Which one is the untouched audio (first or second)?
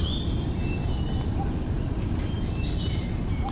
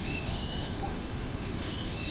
first